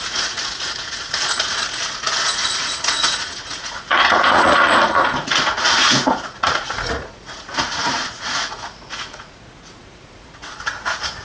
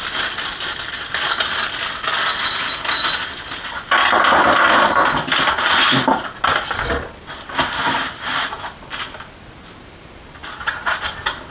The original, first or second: second